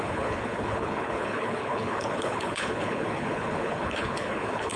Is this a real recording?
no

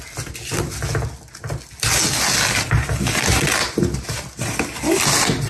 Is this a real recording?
yes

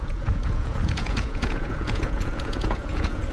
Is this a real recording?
no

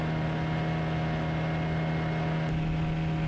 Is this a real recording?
yes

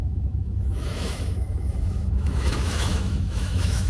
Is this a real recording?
no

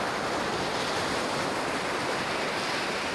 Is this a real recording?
yes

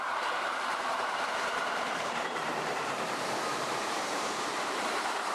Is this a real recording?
no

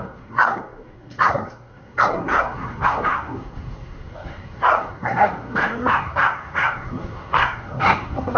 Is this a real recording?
no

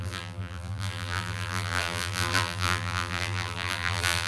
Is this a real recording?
no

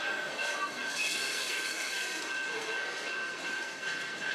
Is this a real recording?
no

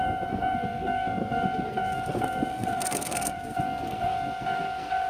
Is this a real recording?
no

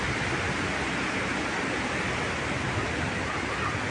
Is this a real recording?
yes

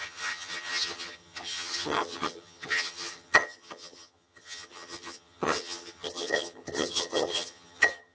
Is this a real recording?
no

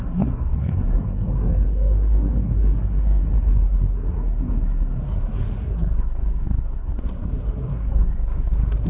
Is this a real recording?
no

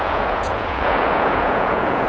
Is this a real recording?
no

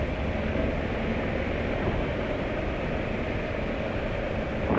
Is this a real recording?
yes